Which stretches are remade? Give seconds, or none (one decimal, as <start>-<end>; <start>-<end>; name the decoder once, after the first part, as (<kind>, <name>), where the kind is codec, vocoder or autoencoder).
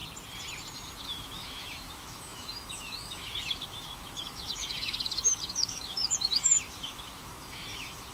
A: 1.0-8.1 (autoencoder, DAC-VAE)